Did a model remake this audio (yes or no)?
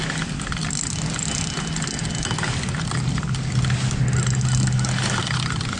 no